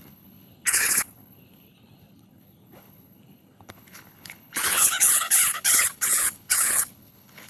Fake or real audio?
fake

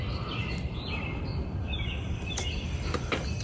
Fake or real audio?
real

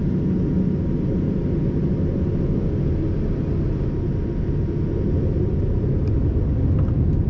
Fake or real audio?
real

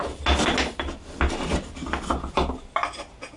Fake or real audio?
real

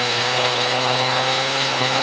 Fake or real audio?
fake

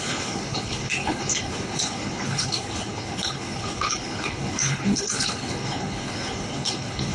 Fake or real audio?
fake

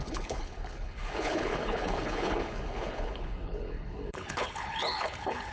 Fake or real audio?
fake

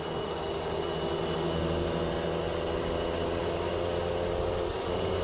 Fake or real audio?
real